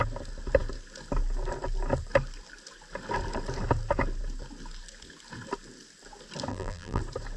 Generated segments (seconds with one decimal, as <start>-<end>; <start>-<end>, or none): 6.5-7.0